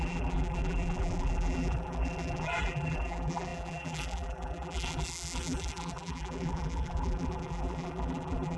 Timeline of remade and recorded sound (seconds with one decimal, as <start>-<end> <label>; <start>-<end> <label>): 0.0-8.6 remade